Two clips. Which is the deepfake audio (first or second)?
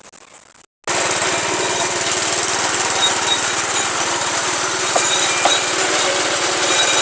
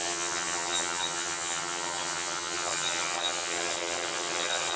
second